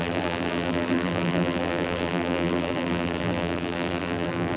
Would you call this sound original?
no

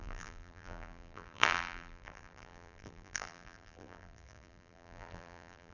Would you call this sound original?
no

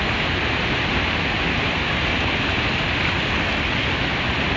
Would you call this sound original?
yes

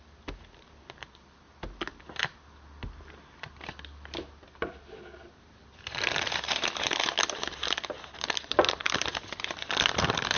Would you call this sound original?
no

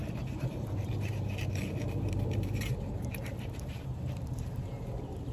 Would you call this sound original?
no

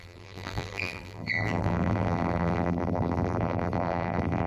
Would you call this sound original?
no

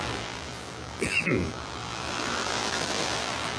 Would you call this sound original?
no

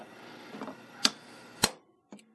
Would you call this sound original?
no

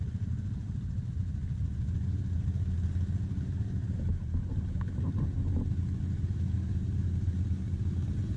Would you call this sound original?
yes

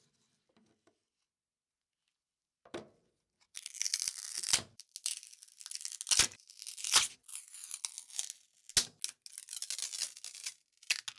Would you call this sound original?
yes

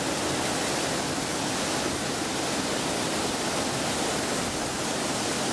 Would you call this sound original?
yes